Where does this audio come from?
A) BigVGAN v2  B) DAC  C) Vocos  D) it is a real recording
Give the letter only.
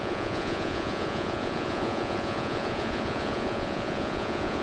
C